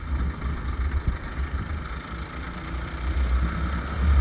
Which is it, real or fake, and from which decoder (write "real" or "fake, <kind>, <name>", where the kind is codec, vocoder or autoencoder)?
real